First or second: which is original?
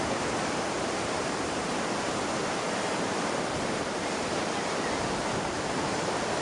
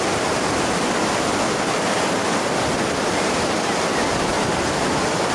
second